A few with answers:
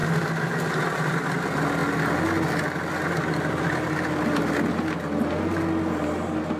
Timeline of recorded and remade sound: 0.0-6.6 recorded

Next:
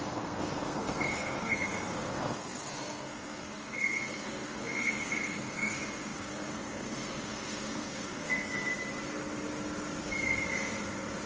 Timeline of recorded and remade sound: 0.0-8.7 remade; 8.7-11.3 recorded

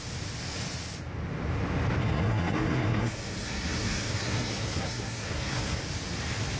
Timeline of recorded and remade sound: 0.0-2.0 recorded; 2.0-5.8 remade; 5.8-6.6 recorded

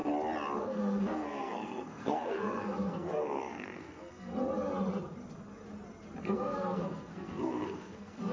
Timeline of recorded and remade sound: 0.0-0.6 recorded; 0.6-4.3 remade; 4.3-6.2 recorded; 6.2-8.3 remade